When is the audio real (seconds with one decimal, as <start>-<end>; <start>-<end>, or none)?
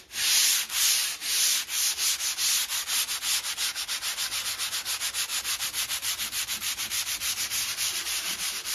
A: 0.0-5.3